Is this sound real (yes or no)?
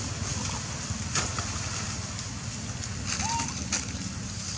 yes